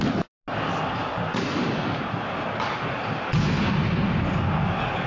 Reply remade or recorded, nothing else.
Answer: recorded